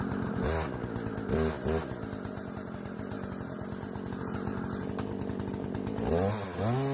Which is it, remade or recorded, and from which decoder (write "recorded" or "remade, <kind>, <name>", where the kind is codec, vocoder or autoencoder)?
recorded